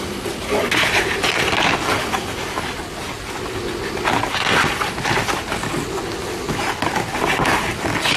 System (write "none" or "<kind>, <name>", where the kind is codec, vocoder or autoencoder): none